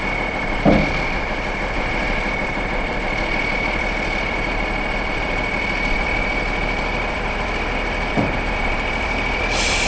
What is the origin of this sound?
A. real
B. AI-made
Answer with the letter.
B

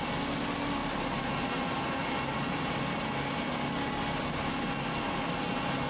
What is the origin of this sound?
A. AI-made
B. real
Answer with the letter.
B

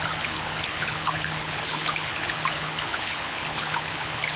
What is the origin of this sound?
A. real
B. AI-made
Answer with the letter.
B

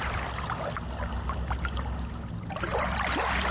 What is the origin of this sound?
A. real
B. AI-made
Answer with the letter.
A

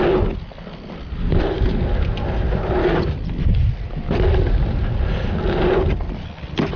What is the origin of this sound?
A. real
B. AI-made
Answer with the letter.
A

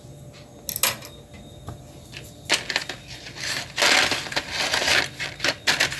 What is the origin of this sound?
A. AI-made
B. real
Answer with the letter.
B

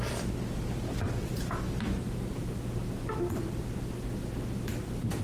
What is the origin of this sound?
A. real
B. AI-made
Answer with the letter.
A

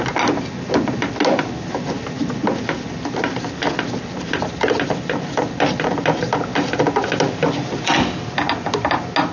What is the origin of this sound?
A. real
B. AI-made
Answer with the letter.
A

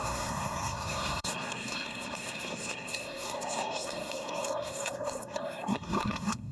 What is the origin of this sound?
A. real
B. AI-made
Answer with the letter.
B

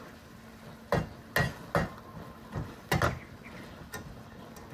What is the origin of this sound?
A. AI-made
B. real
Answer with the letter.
B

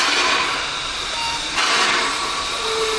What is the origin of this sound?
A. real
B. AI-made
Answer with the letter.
A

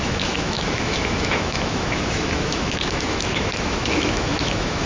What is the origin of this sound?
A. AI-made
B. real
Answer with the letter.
A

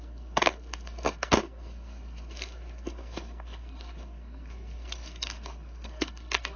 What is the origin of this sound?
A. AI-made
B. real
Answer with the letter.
A